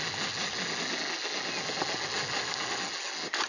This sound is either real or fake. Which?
real